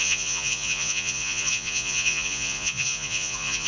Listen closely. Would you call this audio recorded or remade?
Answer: remade